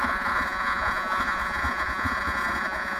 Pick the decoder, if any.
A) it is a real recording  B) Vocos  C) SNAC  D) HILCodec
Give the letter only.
B